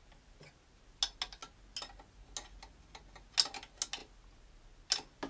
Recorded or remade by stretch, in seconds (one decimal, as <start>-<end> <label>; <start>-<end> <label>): 0.0-5.3 recorded